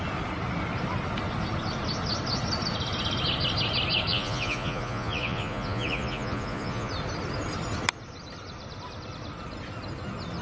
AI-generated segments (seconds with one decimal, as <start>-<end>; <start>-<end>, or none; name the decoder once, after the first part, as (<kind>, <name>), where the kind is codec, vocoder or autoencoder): 4.1-6.9 (vocoder, Vocos)

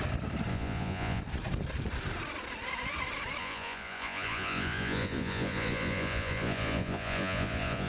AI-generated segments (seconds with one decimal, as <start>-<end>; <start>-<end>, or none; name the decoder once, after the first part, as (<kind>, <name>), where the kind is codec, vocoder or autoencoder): 0.5-1.2 (vocoder, Vocos); 3.4-7.9

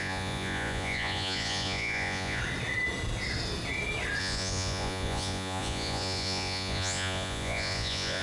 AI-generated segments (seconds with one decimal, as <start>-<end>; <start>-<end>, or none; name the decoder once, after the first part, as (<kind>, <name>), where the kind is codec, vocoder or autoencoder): 0.0-2.4 (vocoder, Vocos); 4.2-8.2

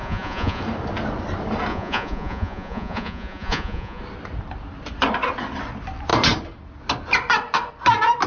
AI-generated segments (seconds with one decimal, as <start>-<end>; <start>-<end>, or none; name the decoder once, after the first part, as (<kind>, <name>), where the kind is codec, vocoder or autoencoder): 0.0-0.6 (vocoder, Vocos); 1.7-4.0

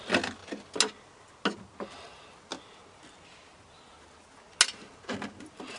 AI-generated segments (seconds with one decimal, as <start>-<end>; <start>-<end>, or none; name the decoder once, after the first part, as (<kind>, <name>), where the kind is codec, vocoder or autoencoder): none

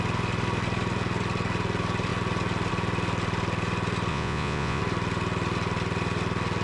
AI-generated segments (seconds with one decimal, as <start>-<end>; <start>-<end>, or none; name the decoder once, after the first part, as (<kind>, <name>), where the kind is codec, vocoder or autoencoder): 4.1-4.8 (vocoder, Vocos)

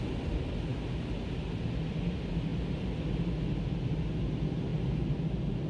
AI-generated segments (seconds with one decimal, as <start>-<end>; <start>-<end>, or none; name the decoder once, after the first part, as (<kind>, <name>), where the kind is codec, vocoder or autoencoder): none

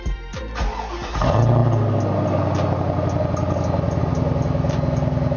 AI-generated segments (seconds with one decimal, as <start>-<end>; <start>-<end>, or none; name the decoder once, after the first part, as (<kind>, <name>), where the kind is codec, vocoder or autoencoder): none